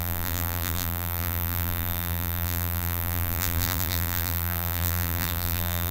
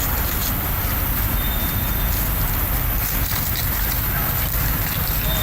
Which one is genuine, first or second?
second